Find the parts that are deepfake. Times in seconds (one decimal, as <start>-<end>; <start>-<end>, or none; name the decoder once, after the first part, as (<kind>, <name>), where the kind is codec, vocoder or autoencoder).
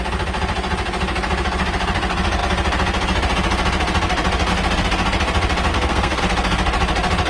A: 5.7-6.2 (codec, SNAC)